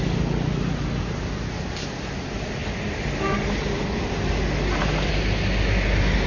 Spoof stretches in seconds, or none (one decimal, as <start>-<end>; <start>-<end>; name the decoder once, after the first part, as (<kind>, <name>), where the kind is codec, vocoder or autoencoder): none